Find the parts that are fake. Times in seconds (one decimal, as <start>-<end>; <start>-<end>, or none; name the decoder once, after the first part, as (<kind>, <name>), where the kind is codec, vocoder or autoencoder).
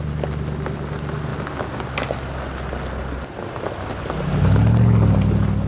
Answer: none